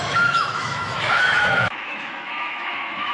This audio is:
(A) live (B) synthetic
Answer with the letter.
B